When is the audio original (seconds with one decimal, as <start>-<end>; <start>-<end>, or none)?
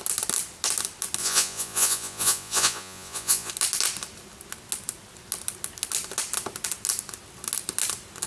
0.0-1.2; 3.5-8.3